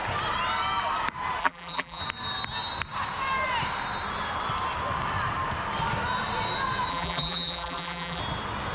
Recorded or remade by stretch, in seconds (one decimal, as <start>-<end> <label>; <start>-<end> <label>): 0.0-1.4 recorded; 1.4-2.0 remade; 2.0-6.9 recorded; 6.9-8.2 remade; 8.2-8.7 recorded